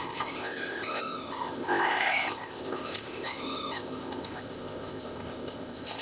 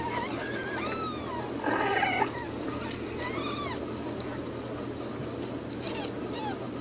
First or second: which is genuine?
second